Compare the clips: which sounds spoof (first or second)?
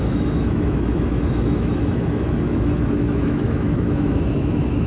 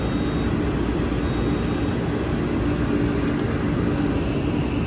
first